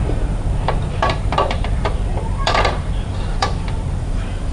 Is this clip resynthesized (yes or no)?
yes